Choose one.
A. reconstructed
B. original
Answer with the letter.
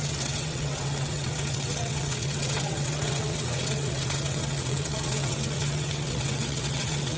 A